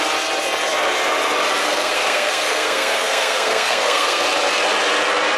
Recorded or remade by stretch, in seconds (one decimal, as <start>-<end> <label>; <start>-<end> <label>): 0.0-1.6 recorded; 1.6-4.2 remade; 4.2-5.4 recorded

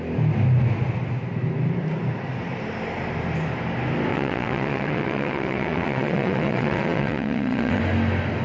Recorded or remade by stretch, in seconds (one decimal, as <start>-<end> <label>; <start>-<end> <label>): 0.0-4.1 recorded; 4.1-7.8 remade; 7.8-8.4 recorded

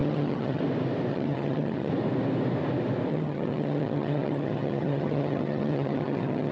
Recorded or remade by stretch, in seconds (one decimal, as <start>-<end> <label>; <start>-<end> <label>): 0.0-0.6 remade; 0.6-1.1 recorded; 1.1-1.9 remade; 1.9-3.1 recorded; 3.1-6.5 remade

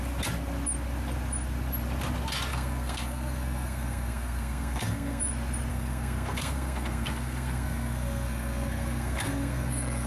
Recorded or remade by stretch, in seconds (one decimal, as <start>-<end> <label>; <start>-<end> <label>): 0.0-2.5 recorded; 2.5-5.2 remade; 5.2-5.7 recorded; 5.7-10.1 remade

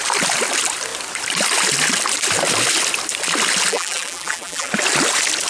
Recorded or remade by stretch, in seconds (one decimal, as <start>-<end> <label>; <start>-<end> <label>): 0.0-3.7 recorded; 3.7-4.7 remade; 4.7-5.5 recorded

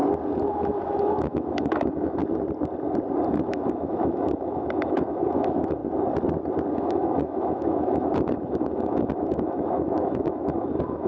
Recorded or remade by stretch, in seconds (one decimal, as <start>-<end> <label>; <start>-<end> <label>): 0.0-0.5 recorded; 0.5-2.2 remade; 2.2-3.3 recorded; 3.3-5.8 remade; 5.8-6.7 recorded; 6.7-11.1 remade

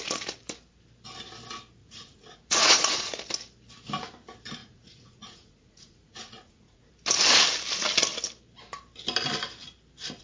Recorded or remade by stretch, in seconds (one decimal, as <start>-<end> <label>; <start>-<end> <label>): 0.0-1.8 recorded; 1.8-3.2 remade; 3.2-4.6 recorded; 4.6-6.9 remade; 6.9-10.2 recorded

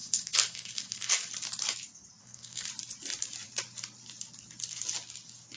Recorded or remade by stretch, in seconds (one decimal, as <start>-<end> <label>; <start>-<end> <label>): 0.0-1.1 remade; 1.1-2.2 recorded; 2.2-2.7 remade; 2.7-5.6 recorded